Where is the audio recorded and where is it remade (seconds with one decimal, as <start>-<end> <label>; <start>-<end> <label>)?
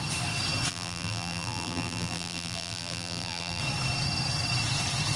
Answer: 0.0-0.7 recorded; 0.7-3.6 remade; 3.6-5.2 recorded